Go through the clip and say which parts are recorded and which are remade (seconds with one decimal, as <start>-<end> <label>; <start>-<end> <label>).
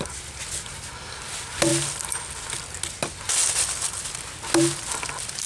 0.0-5.5 recorded